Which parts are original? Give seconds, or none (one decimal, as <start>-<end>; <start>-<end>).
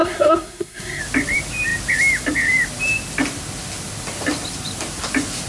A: 1.0-5.5